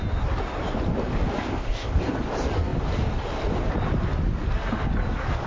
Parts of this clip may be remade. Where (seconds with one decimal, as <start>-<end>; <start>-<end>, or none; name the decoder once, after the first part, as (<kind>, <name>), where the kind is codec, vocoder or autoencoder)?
1.4-2.0 (codec, ZipCodec)